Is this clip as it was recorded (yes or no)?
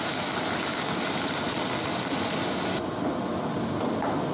yes